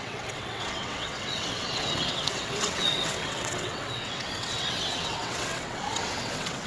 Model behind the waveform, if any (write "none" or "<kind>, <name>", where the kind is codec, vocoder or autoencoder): vocoder, WaveNeXt